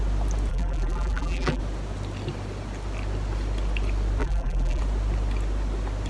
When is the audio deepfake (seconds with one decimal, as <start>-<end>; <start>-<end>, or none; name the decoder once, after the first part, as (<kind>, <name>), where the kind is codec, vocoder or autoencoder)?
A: 0.5-1.6 (vocoder, BigVGAN v2); 4.2-4.8

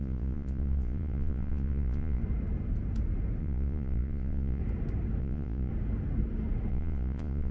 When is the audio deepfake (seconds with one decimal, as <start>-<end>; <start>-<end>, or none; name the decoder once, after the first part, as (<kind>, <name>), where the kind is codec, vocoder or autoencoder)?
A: 0.0-2.2 (vocoder, Vocos); 3.4-4.6; 5.2-5.7; 6.7-7.5

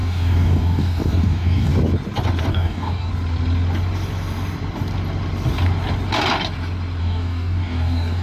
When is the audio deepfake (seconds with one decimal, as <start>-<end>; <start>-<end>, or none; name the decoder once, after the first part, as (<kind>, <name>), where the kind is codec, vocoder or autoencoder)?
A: 0.0-1.7 (codec, DAC); 2.5-3.1; 7.0-8.2

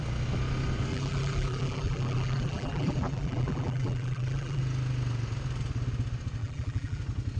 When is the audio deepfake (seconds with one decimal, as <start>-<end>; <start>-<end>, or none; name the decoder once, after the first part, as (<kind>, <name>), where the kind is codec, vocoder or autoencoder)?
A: 0.9-4.6 (vocoder, BigVGAN v2); 6.4-7.0

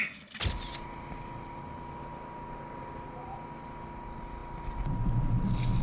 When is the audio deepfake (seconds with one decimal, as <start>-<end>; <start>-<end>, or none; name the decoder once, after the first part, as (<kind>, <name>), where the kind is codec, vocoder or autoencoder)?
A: none

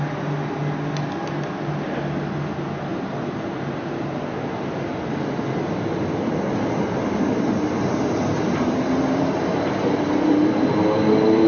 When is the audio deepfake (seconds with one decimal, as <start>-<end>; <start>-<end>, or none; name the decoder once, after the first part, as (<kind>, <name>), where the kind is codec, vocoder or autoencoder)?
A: 2.9-5.2 (vocoder, BigVGAN v2); 8.5-10.7